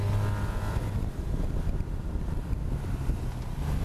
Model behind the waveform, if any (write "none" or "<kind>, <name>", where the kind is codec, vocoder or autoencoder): none